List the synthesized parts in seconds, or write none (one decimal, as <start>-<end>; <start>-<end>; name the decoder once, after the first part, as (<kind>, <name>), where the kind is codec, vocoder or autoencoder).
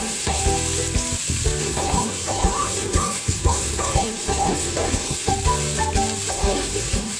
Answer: 0.0-0.4 (codec, SNAC); 1.6-5.3; 6.3-7.2